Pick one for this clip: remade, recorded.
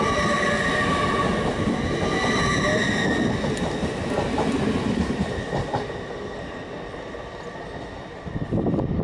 recorded